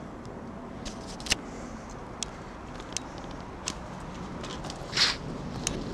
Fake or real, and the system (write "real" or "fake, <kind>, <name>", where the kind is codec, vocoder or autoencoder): real